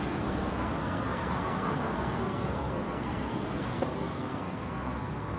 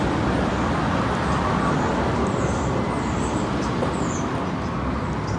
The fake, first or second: first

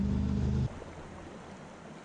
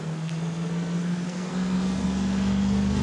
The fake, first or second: second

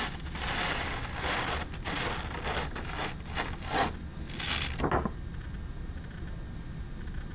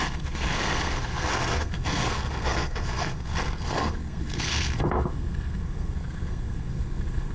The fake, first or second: second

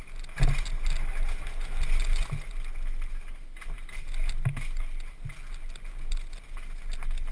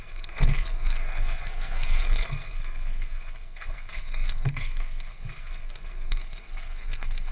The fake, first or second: second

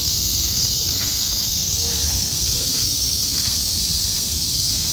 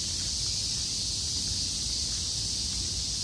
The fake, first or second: first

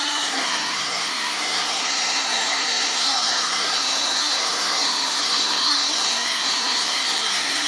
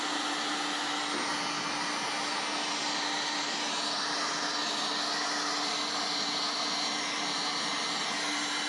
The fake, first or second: first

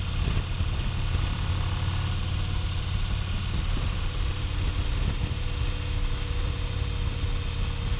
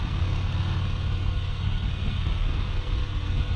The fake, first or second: second